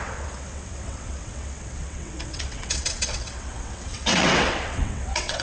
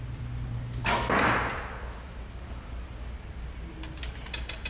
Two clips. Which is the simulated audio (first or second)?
first